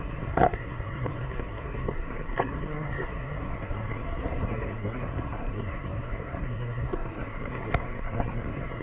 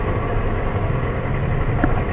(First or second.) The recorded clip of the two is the second